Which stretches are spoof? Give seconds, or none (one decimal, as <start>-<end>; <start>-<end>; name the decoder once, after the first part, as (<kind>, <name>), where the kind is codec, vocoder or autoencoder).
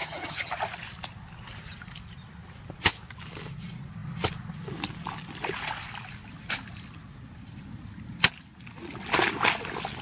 0.0-0.5 (vocoder, HiFi-GAN)